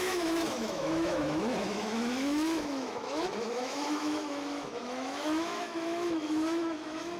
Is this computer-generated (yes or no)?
yes